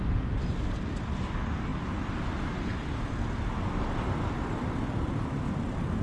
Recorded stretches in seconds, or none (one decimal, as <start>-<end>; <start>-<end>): 0.0-6.0